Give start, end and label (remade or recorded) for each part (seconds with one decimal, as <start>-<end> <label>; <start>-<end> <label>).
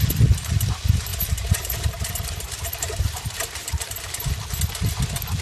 0.0-1.1 recorded; 1.1-4.3 remade; 4.3-5.4 recorded